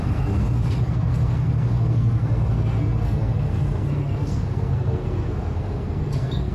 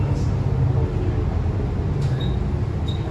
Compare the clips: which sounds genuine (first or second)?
second